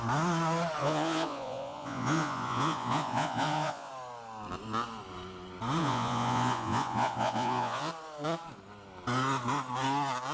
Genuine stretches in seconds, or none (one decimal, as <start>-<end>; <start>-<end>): 0.0-0.8; 3.9-5.8; 7.9-10.3